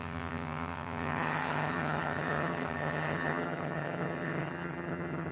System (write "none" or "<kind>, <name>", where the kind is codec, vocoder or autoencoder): vocoder, HiFi-GAN